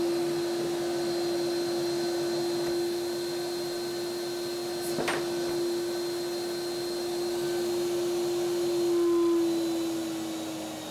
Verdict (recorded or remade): recorded